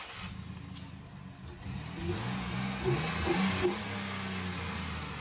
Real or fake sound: real